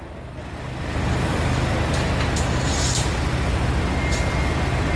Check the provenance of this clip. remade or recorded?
recorded